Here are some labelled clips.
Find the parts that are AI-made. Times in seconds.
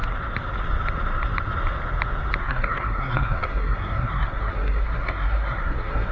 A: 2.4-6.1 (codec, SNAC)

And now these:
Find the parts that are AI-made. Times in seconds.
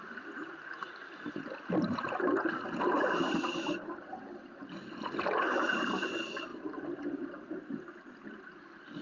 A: none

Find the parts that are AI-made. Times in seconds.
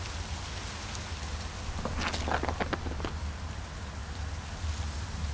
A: none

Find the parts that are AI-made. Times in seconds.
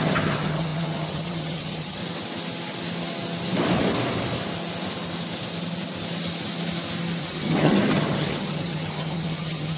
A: 0.0-2.0 (vocoder, HiFi-GAN); 7.2-9.8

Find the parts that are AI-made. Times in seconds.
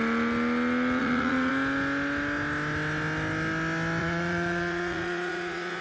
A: 1.0-1.5 (vocoder, Vocos); 4.0-5.8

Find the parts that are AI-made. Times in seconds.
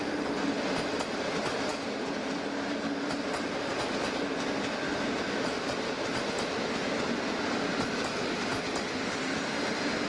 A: none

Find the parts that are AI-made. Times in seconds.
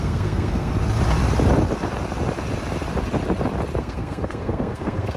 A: 0.0-0.7 (codec, SNAC); 3.8-5.2